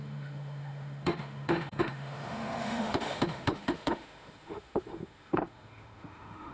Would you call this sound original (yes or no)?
no